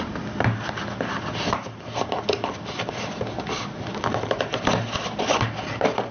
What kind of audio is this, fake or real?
real